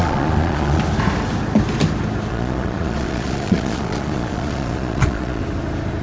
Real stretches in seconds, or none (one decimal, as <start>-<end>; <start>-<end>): 0.8-2.3; 5.4-6.0